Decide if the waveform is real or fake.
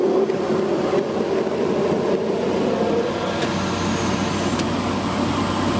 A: real